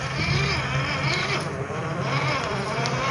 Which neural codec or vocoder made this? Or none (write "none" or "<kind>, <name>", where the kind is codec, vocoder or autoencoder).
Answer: none